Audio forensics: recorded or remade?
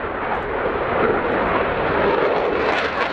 recorded